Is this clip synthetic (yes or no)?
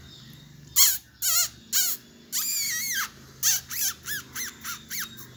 no